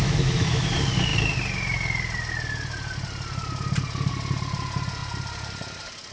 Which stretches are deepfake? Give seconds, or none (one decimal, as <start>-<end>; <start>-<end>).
0.0-0.7